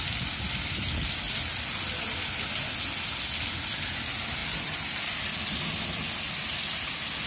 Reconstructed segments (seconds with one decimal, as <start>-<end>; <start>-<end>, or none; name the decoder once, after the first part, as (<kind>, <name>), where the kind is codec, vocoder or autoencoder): none